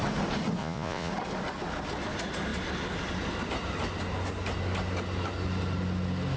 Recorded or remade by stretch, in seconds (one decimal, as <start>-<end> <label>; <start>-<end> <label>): 0.0-0.6 recorded; 0.6-1.1 remade; 1.1-6.4 recorded